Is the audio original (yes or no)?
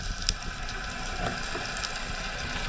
yes